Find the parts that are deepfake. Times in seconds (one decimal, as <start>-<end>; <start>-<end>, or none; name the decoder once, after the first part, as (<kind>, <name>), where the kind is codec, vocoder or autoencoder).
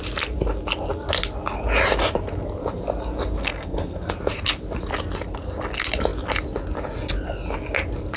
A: 3.4-4.1 (codec, SNAC)